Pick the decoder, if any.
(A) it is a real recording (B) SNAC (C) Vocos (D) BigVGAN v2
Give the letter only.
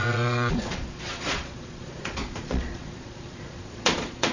C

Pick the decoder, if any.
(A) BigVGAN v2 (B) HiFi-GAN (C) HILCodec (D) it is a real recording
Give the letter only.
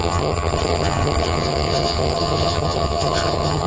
B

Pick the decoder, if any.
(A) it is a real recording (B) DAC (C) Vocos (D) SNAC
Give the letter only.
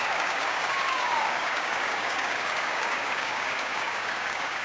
B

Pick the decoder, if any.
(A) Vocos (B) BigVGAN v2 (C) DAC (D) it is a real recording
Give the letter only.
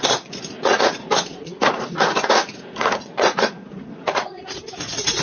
A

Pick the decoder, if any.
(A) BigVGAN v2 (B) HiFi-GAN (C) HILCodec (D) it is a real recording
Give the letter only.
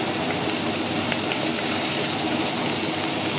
D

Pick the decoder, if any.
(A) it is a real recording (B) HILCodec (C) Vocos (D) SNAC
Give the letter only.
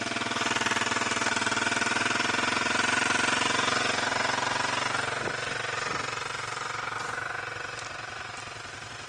A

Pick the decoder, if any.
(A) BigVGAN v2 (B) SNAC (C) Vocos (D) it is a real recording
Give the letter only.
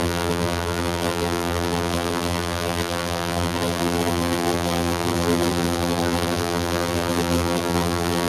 A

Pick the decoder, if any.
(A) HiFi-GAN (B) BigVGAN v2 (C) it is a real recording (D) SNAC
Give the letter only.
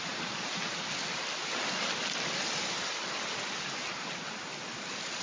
C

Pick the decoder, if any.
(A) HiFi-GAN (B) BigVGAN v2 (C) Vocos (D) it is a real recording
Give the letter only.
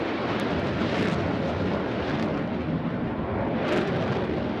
D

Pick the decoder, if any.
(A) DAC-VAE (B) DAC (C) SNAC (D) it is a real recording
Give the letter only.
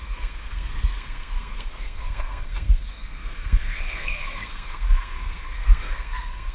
C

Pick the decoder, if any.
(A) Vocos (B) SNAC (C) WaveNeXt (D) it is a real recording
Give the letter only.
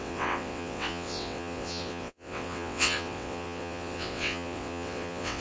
C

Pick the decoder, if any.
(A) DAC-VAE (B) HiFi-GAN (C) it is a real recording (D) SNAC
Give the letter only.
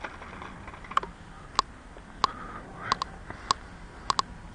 C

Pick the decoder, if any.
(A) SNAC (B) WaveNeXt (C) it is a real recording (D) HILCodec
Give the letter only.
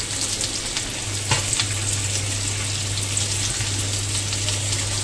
C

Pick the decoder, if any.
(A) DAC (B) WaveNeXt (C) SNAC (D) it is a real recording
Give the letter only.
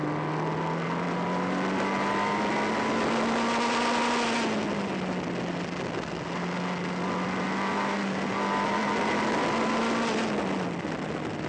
D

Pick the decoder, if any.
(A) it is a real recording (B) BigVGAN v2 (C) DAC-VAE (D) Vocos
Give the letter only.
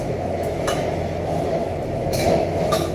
C